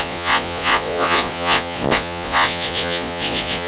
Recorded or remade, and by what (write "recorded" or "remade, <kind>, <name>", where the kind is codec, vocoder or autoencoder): remade, vocoder, Vocos